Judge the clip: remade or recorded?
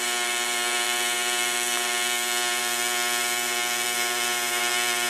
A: remade